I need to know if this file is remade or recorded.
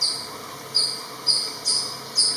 recorded